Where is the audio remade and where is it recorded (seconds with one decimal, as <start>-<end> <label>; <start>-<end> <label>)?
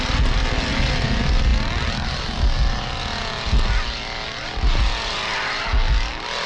0.0-6.5 recorded